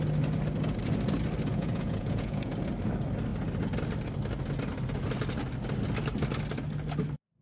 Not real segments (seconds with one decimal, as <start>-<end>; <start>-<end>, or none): 1.5-2.5